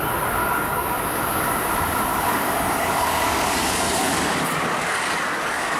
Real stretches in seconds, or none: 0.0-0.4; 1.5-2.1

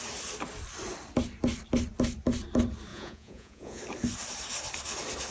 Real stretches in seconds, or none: 0.0-2.9; 3.8-5.3